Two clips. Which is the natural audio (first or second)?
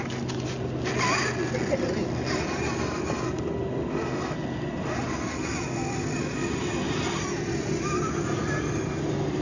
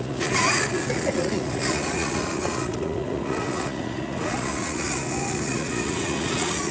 first